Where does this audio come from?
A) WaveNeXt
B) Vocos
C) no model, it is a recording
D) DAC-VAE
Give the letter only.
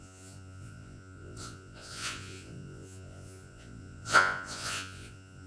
B